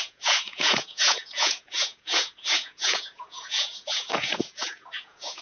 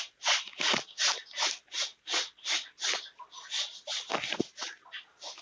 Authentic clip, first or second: second